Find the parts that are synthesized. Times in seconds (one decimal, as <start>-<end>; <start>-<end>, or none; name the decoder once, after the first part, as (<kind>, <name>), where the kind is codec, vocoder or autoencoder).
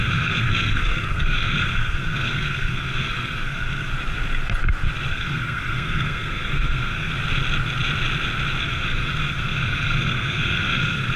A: 0.0-3.9 (codec, SNAC); 5.1-7.1; 8.6-11.2